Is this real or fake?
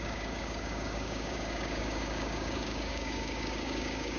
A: fake